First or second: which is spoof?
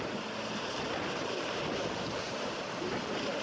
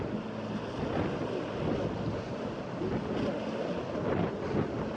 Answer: first